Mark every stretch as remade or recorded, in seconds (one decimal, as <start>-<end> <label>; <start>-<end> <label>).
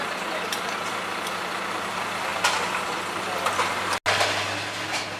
0.0-5.2 recorded